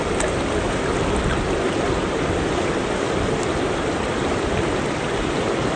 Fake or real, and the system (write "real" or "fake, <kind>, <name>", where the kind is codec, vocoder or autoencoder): real